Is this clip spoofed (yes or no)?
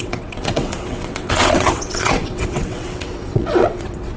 yes